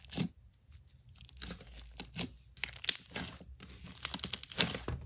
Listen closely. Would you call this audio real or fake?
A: real